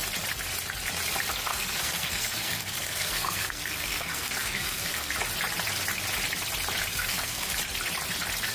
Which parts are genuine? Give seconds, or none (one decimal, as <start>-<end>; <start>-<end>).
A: 0.0-1.5; 5.1-6.9; 7.6-8.5